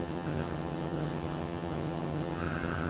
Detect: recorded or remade remade